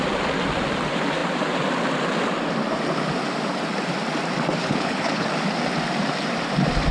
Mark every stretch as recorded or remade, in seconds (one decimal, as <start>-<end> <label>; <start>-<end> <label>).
0.0-4.6 recorded; 4.6-5.3 remade; 5.3-6.9 recorded

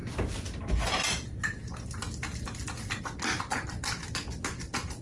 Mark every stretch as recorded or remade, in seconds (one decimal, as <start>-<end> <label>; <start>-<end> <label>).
0.0-5.0 recorded

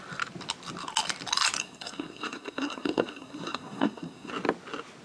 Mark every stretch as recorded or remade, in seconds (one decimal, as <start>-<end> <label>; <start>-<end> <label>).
0.0-1.6 recorded; 1.6-4.3 remade; 4.3-5.0 recorded

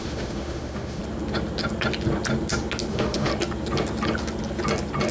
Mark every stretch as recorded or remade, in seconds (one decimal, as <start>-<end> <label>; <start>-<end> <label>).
0.0-1.0 remade; 1.0-2.9 recorded; 2.9-3.3 remade; 3.3-5.1 recorded

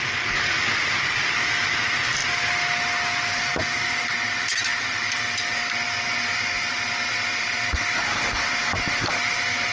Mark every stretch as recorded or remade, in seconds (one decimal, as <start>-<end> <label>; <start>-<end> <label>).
0.0-9.7 recorded